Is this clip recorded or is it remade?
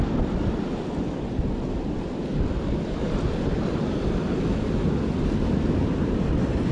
recorded